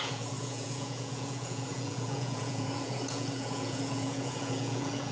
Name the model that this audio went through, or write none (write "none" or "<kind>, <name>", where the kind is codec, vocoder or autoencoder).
vocoder, Vocos